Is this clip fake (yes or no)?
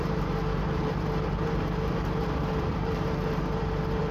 yes